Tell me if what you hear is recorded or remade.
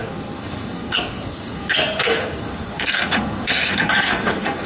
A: remade